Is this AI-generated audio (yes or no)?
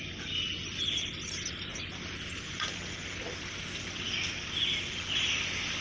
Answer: no